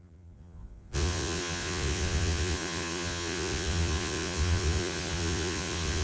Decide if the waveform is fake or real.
fake